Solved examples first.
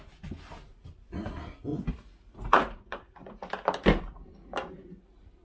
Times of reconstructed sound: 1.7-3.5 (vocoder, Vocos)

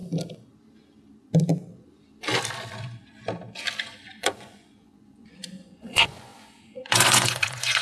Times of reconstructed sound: 3.8-7.8 (vocoder, Vocos)